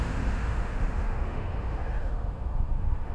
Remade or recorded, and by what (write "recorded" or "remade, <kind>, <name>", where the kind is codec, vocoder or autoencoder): remade, autoencoder, DAC-VAE